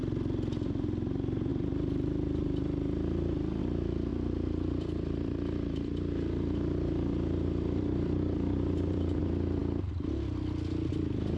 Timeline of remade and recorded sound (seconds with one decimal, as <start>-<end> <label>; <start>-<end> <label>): 0.0-4.1 recorded; 4.1-9.2 remade; 9.2-11.4 recorded